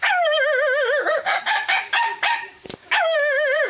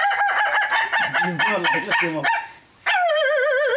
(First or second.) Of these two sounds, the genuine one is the second